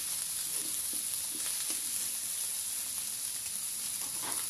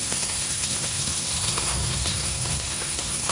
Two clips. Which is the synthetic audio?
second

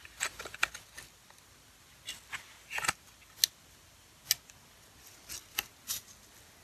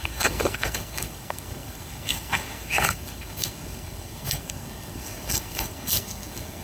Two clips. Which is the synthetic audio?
second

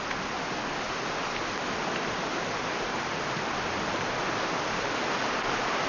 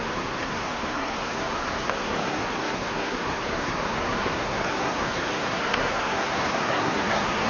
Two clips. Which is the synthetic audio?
second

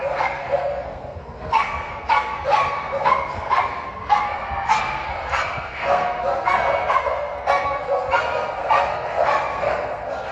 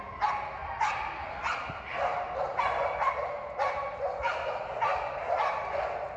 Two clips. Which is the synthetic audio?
first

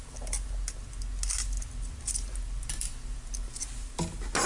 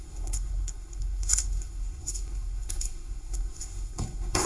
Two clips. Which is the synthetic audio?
second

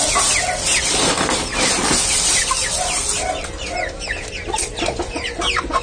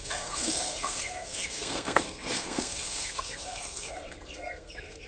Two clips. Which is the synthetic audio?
second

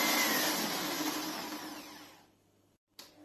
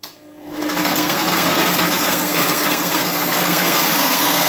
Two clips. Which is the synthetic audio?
second